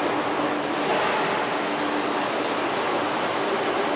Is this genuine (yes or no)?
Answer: yes